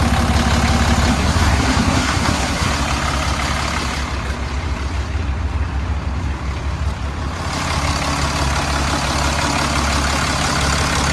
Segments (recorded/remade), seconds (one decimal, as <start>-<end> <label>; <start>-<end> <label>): 0.0-1.1 recorded; 1.1-2.7 remade; 2.7-11.1 recorded